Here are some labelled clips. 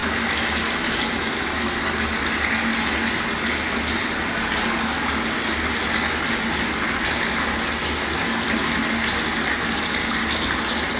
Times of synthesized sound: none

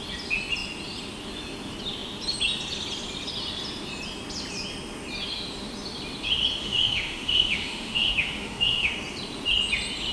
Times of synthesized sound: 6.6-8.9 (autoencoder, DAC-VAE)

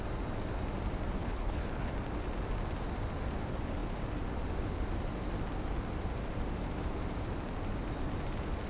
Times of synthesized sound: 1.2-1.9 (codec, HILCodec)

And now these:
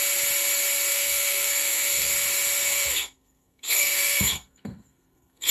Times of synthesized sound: 0.9-2.1 (codec, SNAC); 2.6-5.5